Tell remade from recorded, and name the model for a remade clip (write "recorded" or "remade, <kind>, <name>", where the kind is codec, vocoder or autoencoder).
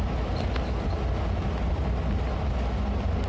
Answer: recorded